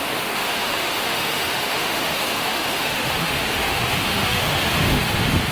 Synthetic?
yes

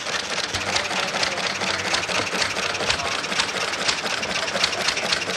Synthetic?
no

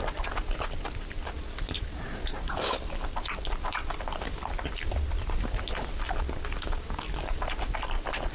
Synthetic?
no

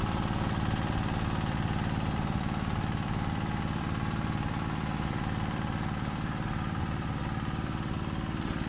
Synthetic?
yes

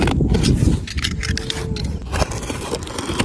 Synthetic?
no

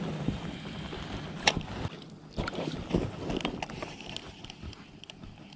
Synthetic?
no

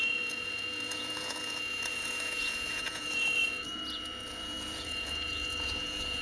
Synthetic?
yes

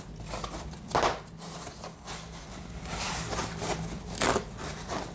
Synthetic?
no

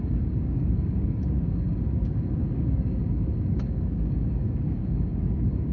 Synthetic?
yes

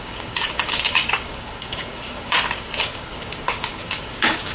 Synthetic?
yes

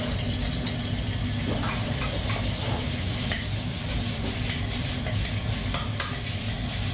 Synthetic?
no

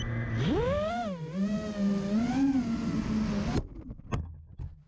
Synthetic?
no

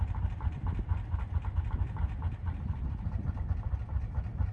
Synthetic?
no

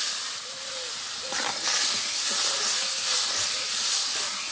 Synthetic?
no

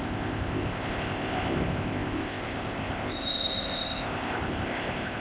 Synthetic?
yes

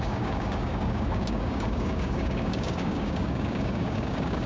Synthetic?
yes